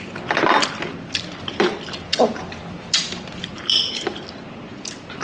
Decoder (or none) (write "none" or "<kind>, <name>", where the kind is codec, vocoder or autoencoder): none